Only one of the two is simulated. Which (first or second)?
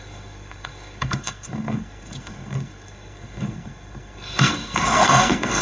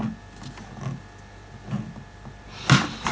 first